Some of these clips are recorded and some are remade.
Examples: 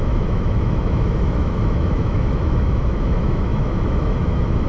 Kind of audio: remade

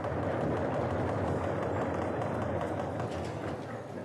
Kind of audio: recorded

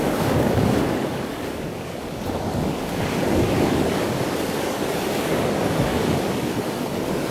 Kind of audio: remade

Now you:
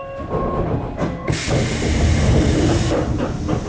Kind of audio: recorded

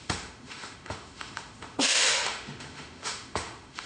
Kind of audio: remade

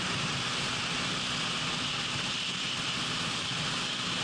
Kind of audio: recorded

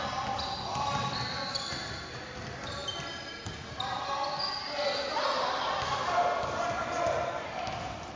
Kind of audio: recorded